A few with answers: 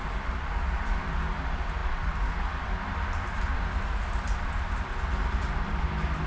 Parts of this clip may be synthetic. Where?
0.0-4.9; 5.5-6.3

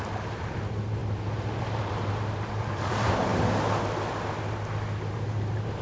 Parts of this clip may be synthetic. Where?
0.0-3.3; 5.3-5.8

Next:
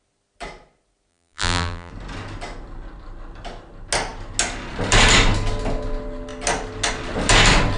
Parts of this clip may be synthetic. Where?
1.1-1.9